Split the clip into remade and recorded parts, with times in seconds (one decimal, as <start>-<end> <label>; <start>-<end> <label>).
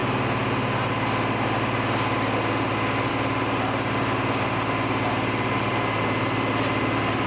0.0-7.3 recorded